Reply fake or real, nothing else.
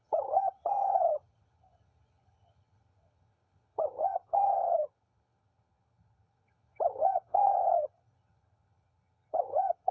fake